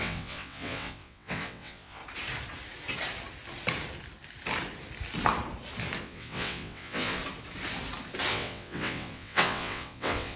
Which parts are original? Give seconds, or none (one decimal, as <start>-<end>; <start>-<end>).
2.0-6.0; 7.2-8.3